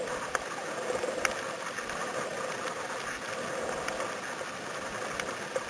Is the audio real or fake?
real